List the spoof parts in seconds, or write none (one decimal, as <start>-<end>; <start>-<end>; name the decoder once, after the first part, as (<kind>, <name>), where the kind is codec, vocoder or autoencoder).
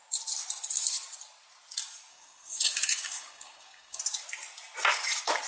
2.1-4.0 (codec, DAC)